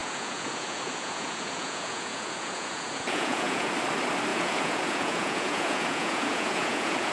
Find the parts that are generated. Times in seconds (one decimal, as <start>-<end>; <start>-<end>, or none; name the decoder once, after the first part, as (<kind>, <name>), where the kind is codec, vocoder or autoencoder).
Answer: 0.0-3.7 (vocoder, Vocos); 4.3-7.1